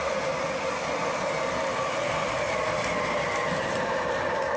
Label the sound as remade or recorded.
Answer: recorded